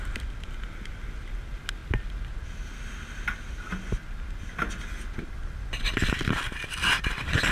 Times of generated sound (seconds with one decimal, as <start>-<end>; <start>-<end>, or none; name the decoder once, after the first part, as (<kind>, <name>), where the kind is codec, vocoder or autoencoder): none